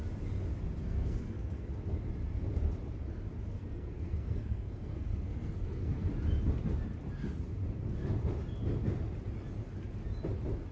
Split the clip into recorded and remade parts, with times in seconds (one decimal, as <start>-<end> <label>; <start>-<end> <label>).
0.0-0.8 recorded; 0.8-1.7 remade; 1.7-3.5 recorded; 3.5-6.1 remade; 6.1-10.7 recorded